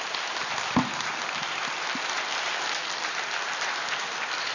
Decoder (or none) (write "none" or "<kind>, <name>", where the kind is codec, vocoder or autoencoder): none